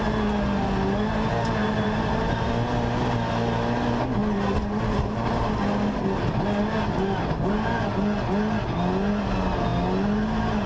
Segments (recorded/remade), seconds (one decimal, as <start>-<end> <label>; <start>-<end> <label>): 0.0-1.6 recorded; 1.6-2.5 remade; 2.5-10.7 recorded